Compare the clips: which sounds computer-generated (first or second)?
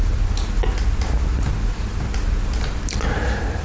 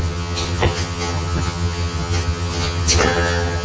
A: second